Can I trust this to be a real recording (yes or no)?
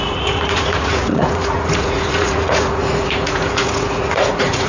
no